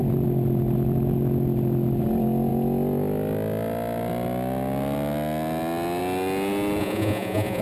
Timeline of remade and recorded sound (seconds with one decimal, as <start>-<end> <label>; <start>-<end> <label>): 0.0-6.8 recorded; 6.8-7.6 remade